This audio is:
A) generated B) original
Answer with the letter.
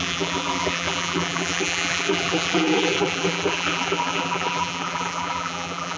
A